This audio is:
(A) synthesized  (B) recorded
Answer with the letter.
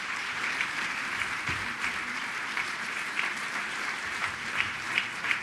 A